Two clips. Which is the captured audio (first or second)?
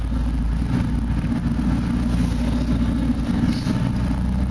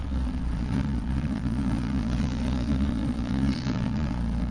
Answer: first